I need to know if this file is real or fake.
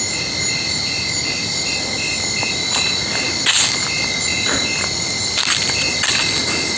real